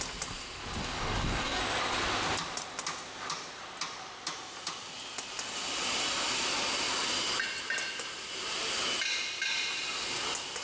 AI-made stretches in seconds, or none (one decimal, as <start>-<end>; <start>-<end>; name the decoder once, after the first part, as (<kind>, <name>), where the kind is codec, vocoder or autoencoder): 0.8-1.6 (codec, DAC)